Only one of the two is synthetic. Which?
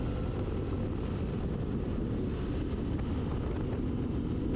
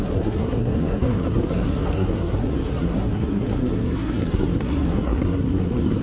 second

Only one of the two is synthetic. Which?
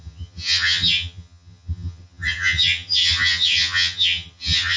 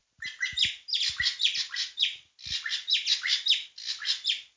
first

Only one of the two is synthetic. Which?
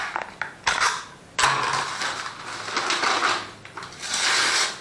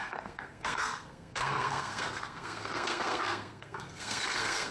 second